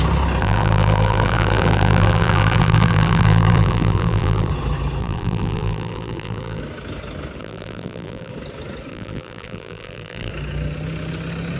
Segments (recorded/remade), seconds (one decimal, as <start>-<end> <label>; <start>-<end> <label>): 0.0-0.4 recorded; 0.4-4.5 remade; 4.5-5.0 recorded; 5.0-6.6 remade; 6.6-7.4 recorded; 7.4-8.3 remade; 8.3-8.9 recorded; 8.9-10.3 remade; 10.3-11.6 recorded